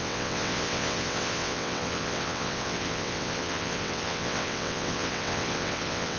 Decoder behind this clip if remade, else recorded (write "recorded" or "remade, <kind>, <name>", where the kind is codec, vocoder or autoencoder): remade, vocoder, WaveNeXt